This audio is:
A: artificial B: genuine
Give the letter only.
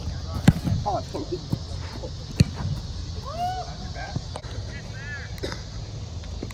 B